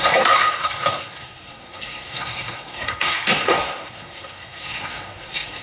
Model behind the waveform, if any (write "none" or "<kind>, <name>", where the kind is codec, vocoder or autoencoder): codec, SNAC